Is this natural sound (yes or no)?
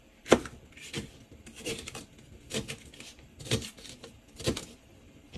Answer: no